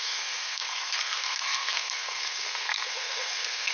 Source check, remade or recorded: remade